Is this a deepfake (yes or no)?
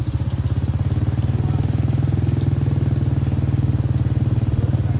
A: no